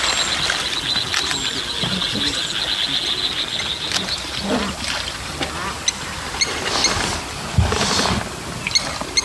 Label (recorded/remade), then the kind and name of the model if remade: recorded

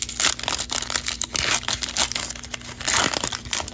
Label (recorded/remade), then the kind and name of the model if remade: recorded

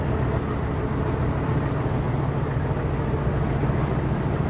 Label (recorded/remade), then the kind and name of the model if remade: recorded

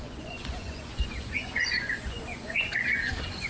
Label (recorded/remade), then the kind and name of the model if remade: remade, vocoder, Vocos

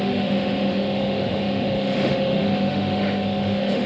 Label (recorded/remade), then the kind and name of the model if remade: remade, autoencoder, DAC-VAE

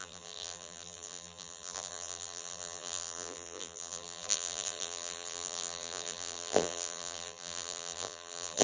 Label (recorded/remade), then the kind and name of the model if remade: remade, vocoder, BigVGAN v2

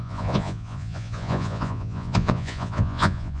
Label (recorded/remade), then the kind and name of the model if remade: remade, vocoder, Vocos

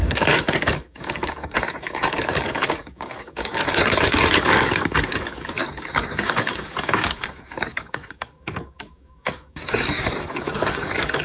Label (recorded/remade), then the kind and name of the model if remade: remade, codec, DAC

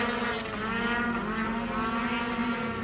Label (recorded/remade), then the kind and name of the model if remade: recorded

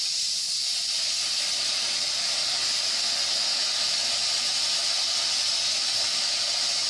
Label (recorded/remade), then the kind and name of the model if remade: recorded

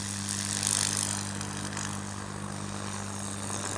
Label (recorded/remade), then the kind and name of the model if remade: recorded